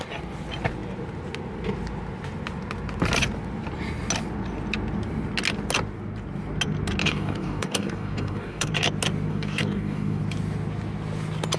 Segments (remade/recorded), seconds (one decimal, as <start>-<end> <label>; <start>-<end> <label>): 0.0-7.0 recorded; 7.0-8.7 remade; 8.7-9.3 recorded; 9.3-10.2 remade; 10.2-11.6 recorded